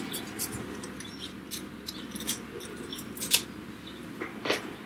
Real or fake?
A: real